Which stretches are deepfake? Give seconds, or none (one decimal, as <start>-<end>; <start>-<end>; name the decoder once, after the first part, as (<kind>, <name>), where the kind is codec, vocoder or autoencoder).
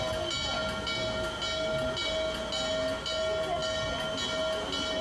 none